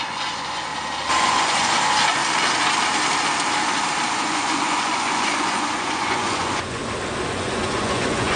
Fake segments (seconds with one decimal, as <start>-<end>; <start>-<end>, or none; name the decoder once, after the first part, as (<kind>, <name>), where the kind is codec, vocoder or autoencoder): 0.0-0.7 (vocoder, Vocos); 1.2-2.2; 4.1-6.8; 7.3-8.4

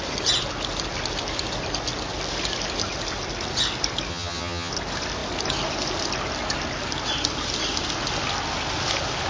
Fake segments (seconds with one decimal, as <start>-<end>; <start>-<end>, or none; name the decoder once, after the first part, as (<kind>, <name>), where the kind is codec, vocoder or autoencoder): 4.1-4.7 (vocoder, HiFi-GAN)

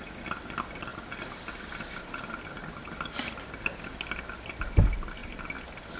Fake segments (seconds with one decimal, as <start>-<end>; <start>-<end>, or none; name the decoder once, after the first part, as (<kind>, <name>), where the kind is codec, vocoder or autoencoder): 0.0-6.0 (vocoder, BigVGAN v2)

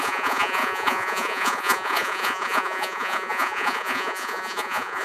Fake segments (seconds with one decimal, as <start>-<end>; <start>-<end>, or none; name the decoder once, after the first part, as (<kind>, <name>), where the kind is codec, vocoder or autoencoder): 0.0-5.0 (vocoder, Vocos)

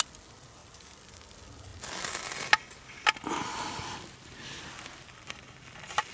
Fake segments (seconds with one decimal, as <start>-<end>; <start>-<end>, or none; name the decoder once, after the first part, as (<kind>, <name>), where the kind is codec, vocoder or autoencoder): 0.6-1.1 (vocoder, BigVGAN v2)

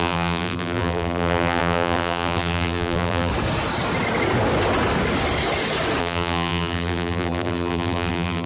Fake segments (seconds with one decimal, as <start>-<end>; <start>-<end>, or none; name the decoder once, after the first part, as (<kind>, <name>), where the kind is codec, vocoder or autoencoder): 0.0-3.3 (vocoder, BigVGAN v2); 6.0-8.5

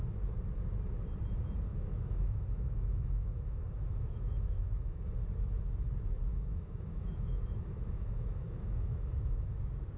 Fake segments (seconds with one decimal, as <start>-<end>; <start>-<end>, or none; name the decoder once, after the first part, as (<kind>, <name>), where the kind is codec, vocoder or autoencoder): 1.7-5.0 (autoencoder, DAC-VAE); 6.3-9.6